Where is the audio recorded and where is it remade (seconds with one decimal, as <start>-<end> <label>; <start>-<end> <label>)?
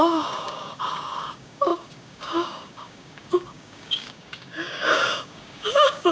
0.0-6.1 remade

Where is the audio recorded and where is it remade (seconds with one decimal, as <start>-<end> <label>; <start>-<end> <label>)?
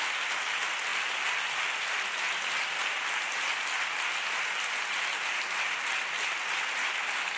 0.0-7.4 recorded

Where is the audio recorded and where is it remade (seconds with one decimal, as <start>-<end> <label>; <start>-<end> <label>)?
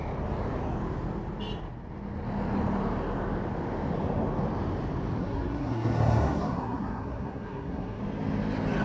0.0-5.2 recorded; 5.2-8.0 remade; 8.0-8.8 recorded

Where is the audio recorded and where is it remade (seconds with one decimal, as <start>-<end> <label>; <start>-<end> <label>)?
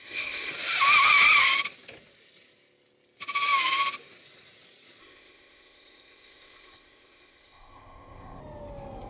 0.0-0.5 remade; 0.5-5.0 recorded; 5.0-8.4 remade; 8.4-9.1 recorded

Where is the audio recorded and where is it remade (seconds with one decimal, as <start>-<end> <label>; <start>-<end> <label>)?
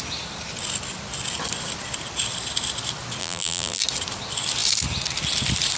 0.0-3.2 recorded; 3.2-3.8 remade; 3.8-5.8 recorded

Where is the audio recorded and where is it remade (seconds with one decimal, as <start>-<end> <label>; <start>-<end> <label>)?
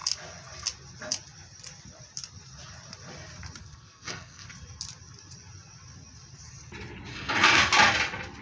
0.0-3.6 recorded; 3.6-4.5 remade; 4.5-7.1 recorded; 7.1-7.7 remade; 7.7-8.4 recorded